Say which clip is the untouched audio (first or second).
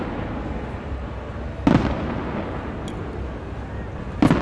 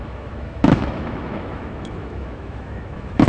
first